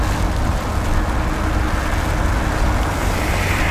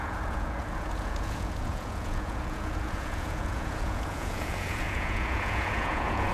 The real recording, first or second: first